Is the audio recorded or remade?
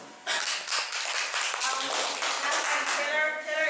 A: recorded